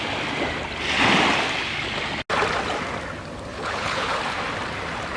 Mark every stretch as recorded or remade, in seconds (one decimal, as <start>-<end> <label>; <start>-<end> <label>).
0.0-3.5 recorded; 3.5-4.2 remade; 4.2-5.2 recorded